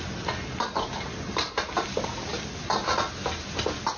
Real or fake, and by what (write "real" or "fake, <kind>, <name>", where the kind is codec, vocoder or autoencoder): real